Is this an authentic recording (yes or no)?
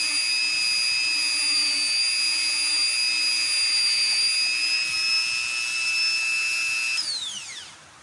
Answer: yes